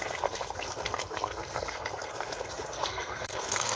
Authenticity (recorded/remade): remade